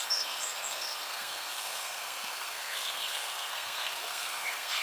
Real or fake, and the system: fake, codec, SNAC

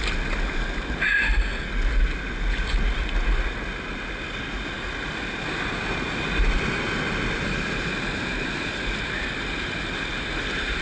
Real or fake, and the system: real